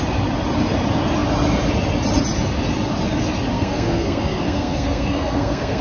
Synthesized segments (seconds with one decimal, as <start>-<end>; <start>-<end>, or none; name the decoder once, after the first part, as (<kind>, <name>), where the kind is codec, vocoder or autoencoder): 3.5-5.8 (codec, SNAC)